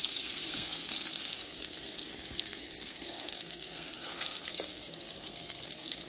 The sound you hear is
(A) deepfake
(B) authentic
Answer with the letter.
A